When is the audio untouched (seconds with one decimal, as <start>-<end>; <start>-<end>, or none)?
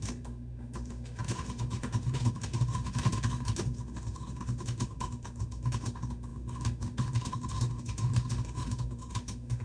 none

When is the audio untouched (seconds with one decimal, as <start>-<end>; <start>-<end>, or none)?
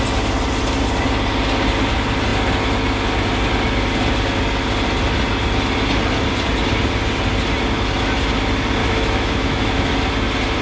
0.0-8.8; 9.9-10.6